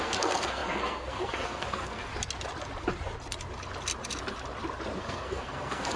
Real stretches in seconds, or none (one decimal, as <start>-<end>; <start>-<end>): 2.1-5.0

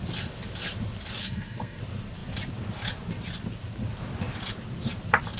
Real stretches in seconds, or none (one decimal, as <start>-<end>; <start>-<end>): 0.0-1.2; 1.8-5.4